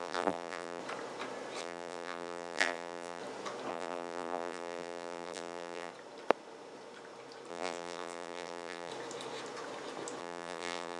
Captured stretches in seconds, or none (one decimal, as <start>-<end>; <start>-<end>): 0.8-1.6; 3.2-3.7; 5.9-7.5; 8.9-10.2